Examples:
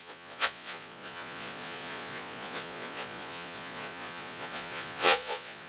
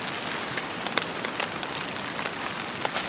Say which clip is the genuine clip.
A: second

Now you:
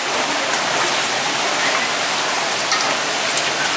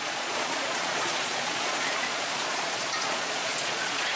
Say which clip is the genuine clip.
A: first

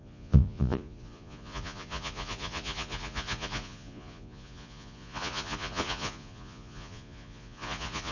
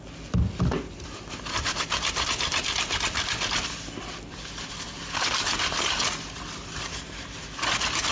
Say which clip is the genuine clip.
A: second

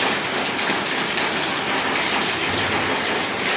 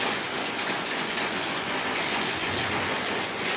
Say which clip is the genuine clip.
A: first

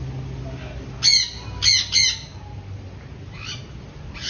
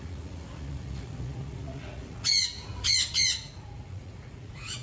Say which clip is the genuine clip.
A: first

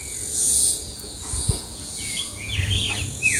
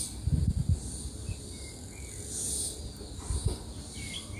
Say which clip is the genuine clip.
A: second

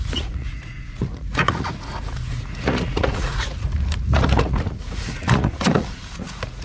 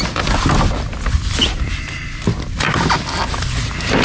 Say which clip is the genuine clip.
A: second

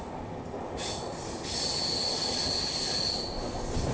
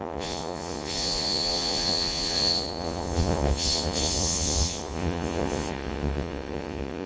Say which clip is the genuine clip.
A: first